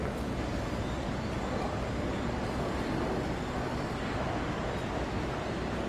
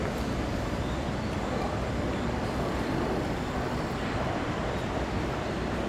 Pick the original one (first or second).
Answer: first